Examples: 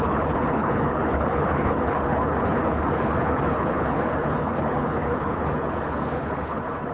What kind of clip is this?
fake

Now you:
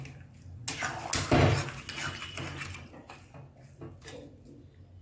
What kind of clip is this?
real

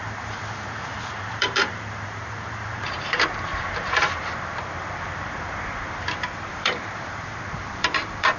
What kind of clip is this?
fake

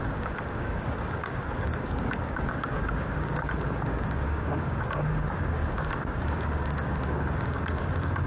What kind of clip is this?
fake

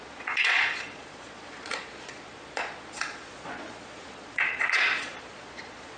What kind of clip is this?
fake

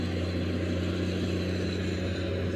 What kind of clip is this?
real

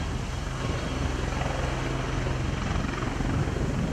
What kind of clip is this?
real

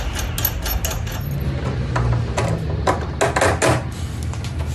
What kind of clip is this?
real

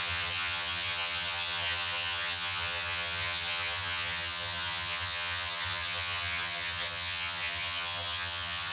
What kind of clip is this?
fake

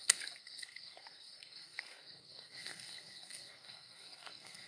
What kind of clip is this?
fake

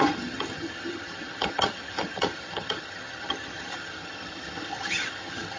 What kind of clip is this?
fake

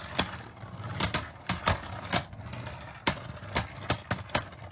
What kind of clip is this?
real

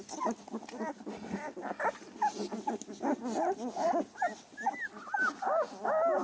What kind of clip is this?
real